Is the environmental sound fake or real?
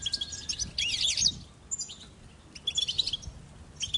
real